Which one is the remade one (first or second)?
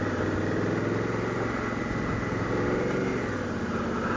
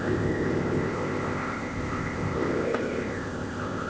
second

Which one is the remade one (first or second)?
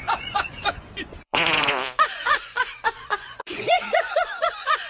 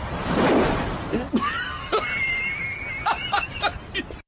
first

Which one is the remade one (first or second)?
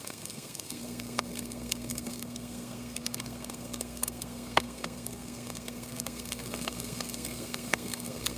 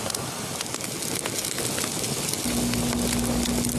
first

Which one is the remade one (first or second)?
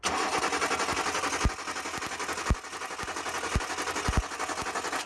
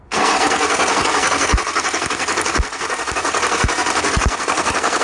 second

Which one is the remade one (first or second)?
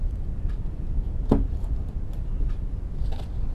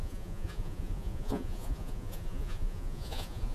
second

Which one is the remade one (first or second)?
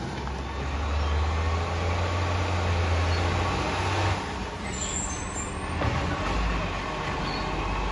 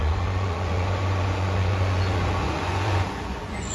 second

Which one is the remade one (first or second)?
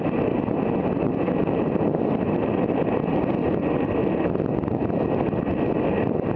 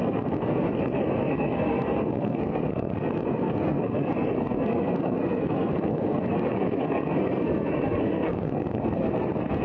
second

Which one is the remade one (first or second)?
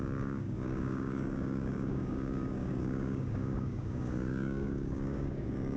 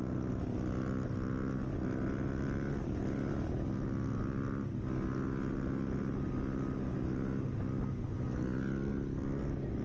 first